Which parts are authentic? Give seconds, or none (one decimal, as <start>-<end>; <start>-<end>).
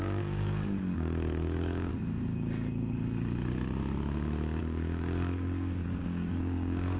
1.9-4.6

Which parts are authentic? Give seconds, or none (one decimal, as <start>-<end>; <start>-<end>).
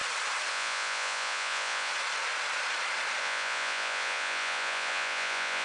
0.0-0.5; 1.9-3.2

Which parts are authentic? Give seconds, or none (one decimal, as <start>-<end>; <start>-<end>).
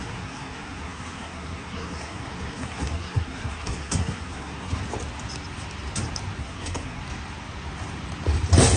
4.8-6.4; 7.0-8.8